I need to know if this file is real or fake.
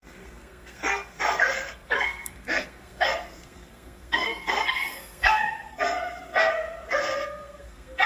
fake